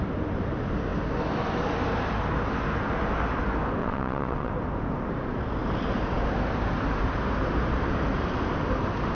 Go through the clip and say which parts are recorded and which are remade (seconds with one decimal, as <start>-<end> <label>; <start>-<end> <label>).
0.0-3.8 recorded; 3.8-4.5 remade; 4.5-9.1 recorded